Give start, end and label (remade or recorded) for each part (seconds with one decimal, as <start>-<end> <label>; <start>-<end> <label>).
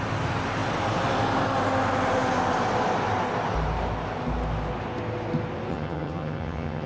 0.0-5.7 recorded; 5.7-6.9 remade